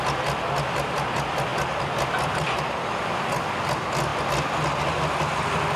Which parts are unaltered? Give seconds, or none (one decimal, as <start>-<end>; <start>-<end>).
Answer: 0.0-5.8